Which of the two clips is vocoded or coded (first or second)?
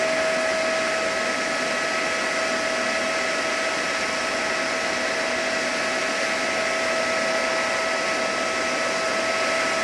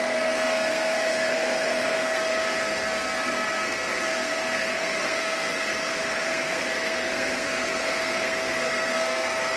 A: second